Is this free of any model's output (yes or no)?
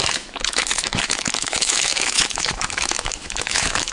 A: no